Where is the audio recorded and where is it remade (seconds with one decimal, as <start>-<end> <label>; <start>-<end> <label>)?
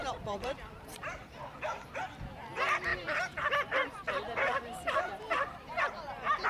0.0-1.0 remade; 1.0-2.9 recorded; 2.9-5.8 remade; 5.8-6.5 recorded